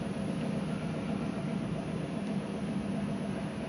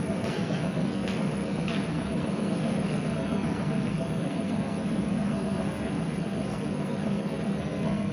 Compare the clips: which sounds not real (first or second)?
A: second